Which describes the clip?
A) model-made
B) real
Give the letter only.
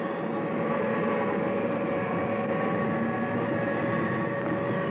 B